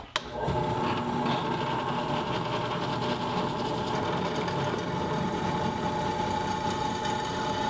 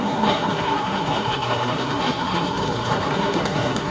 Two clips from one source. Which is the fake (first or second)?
second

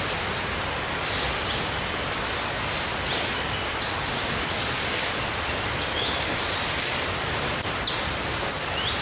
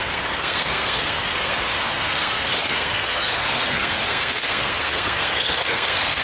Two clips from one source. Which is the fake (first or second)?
second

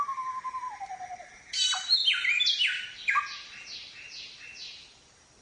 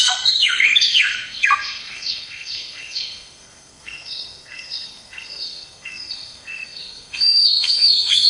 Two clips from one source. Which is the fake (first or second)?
second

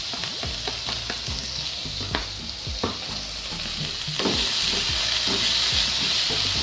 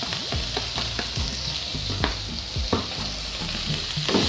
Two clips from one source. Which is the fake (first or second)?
second